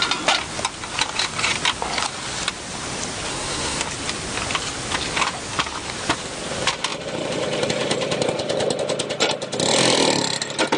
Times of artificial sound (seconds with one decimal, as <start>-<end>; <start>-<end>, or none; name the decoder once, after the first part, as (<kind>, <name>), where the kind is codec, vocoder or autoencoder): 3.3-3.8 (codec, SNAC)